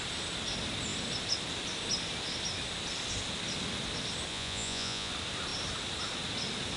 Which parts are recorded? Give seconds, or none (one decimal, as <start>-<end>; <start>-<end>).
0.0-4.3; 5.1-6.8